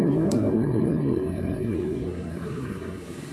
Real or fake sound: fake